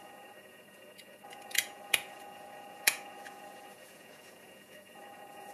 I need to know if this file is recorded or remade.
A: remade